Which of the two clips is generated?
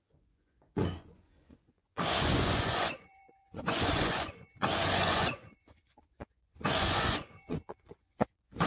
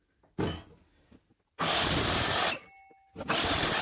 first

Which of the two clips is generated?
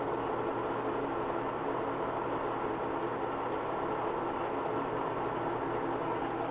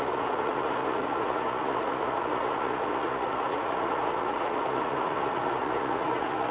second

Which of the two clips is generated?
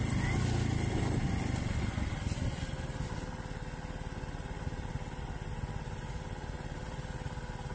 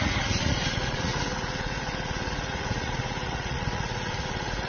second